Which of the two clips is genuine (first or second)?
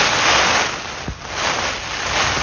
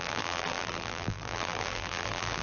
first